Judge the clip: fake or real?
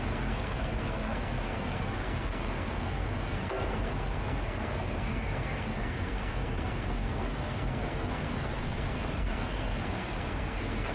fake